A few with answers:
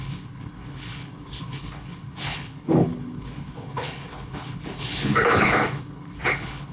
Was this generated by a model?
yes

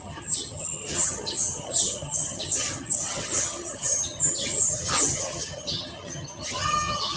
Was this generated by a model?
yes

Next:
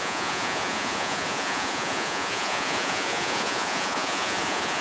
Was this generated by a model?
yes